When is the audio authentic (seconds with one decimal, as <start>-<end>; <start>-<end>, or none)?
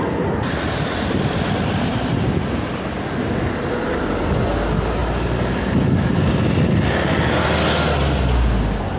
0.0-9.0